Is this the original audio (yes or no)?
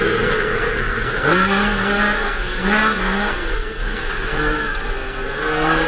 no